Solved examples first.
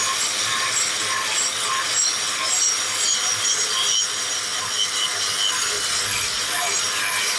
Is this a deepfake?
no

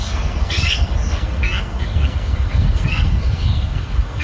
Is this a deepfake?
yes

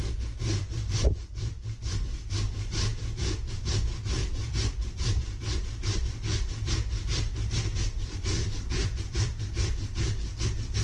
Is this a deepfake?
yes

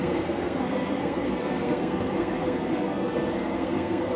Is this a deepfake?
yes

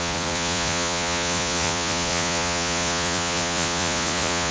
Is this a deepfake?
yes